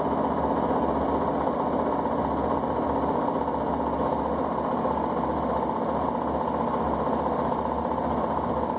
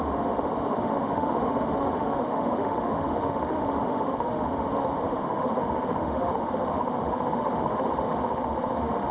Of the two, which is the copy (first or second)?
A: second